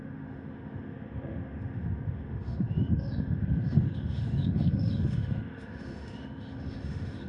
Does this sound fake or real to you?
fake